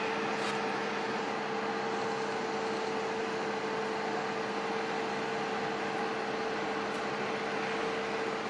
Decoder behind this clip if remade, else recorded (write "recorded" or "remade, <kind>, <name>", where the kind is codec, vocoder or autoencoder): recorded